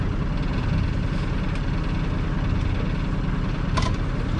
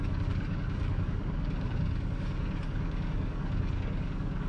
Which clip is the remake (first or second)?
second